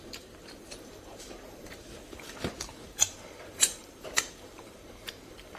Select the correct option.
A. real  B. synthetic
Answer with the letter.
B